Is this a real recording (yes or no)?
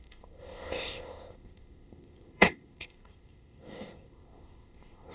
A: no